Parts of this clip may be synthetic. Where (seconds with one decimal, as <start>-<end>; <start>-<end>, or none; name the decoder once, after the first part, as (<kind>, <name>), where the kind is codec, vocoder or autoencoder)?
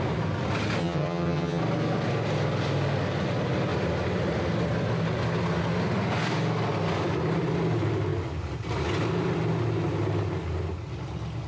0.8-1.6 (vocoder, HiFi-GAN)